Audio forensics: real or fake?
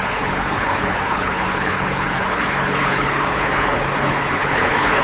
fake